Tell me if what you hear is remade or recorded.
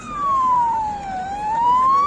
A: remade